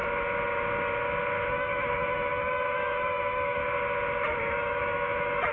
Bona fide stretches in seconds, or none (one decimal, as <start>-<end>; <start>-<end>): 0.0-1.5; 3.6-4.4